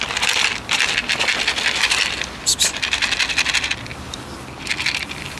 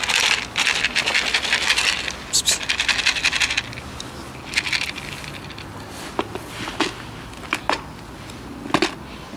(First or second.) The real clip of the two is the second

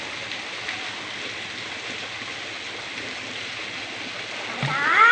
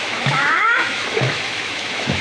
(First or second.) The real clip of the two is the first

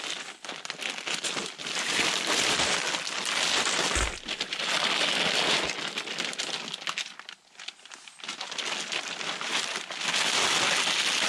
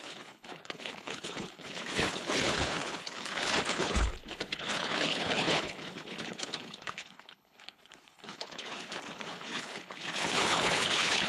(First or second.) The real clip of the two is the first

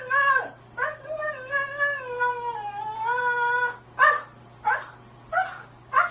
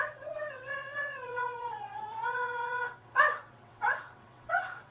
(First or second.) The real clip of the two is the first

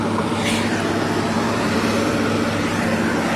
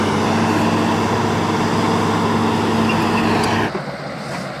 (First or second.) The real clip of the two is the second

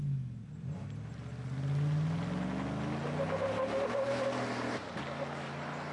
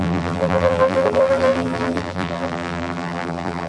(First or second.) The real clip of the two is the first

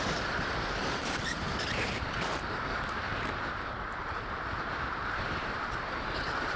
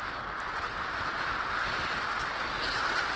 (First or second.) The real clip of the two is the second